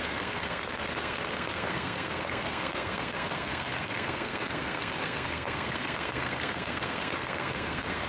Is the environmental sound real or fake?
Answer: fake